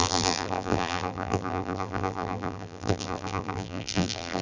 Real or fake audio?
fake